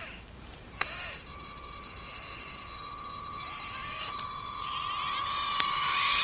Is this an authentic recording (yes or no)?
no